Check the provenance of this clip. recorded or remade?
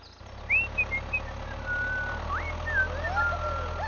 recorded